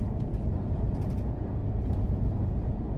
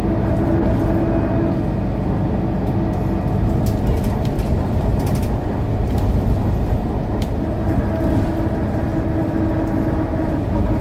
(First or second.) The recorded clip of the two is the second